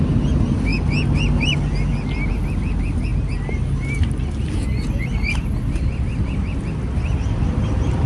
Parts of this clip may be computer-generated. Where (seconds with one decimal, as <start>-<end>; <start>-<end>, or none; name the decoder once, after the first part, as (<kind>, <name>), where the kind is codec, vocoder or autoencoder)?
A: none